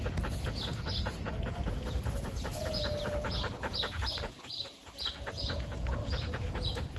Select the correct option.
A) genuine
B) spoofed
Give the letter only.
B